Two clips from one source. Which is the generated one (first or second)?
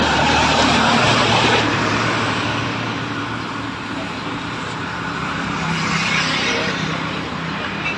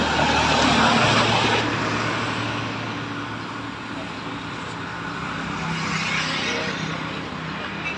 first